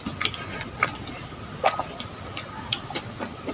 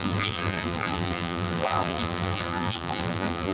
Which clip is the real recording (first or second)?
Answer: first